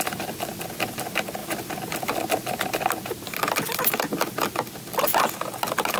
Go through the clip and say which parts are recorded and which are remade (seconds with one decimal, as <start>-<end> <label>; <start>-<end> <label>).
0.0-5.1 remade; 5.1-6.0 recorded

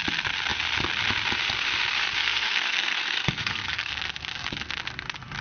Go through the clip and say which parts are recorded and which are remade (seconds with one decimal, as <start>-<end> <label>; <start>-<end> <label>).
0.0-2.2 recorded; 2.2-3.9 remade; 3.9-5.4 recorded

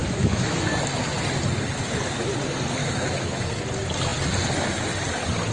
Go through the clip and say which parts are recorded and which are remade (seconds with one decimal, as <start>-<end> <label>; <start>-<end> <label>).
0.0-0.6 remade; 0.6-2.8 recorded; 2.8-3.4 remade; 3.4-5.5 recorded

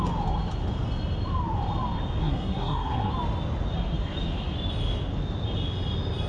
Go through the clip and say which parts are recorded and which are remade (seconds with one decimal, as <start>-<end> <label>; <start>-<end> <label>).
0.0-2.2 recorded; 2.2-3.1 remade; 3.1-6.3 recorded

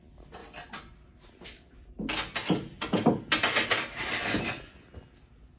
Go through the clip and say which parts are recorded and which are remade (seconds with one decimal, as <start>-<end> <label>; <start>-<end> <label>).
0.0-5.6 recorded